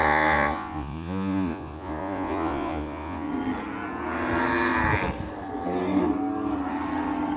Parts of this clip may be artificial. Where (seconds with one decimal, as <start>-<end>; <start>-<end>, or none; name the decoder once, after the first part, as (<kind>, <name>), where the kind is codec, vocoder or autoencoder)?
0.0-3.3 (vocoder, Vocos)